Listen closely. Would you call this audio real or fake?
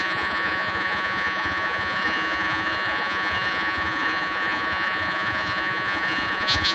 fake